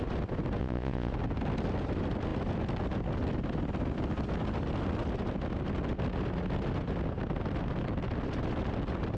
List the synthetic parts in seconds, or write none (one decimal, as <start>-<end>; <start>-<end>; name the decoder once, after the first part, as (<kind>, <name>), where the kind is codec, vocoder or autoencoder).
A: 0.6-1.1 (vocoder, Vocos)